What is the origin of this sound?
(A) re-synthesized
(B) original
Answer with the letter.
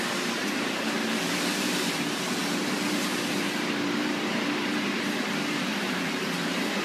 A